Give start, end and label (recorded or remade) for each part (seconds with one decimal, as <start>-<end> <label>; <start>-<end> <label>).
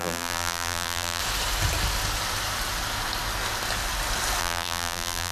0.0-1.2 remade; 1.2-4.4 recorded; 4.4-5.3 remade